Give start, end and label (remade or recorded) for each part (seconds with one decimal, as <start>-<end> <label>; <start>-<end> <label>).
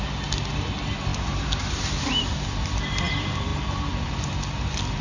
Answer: 0.0-5.0 recorded